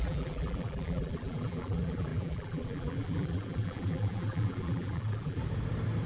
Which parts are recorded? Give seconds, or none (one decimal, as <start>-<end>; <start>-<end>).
5.4-6.1